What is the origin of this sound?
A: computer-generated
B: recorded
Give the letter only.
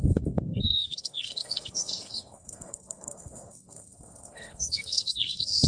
A